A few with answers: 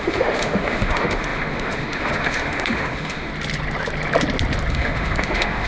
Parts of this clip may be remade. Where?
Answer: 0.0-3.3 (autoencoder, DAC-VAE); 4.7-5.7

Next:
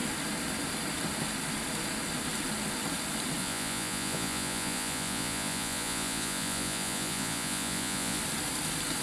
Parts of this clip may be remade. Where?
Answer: 3.4-8.2 (vocoder, Vocos)

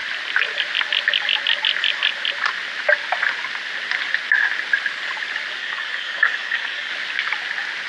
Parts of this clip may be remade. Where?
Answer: 5.6-6.9 (codec, DAC)

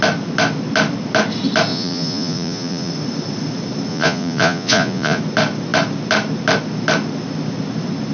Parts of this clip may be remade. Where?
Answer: 1.7-2.9 (vocoder, Vocos); 3.9-5.2

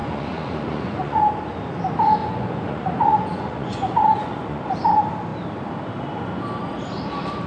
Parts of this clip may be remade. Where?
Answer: 0.0-1.2 (vocoder, Vocos); 2.2-4.6

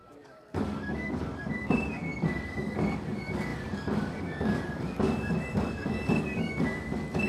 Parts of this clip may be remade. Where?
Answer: 0.0-7.3 (codec, DAC)